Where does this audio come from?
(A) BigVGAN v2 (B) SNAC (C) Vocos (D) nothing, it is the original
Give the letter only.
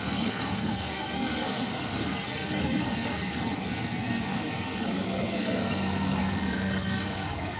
B